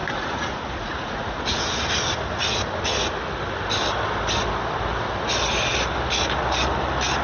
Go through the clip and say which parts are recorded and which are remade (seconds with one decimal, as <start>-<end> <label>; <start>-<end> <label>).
0.0-1.6 remade; 1.6-7.2 recorded